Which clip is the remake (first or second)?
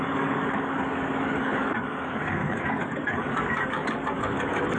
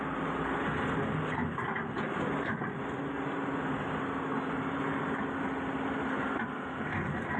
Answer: first